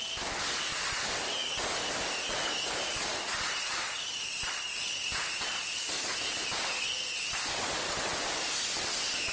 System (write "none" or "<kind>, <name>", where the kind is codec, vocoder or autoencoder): none